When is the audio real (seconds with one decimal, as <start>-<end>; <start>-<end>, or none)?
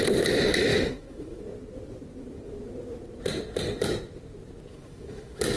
0.0-0.7; 1.4-4.7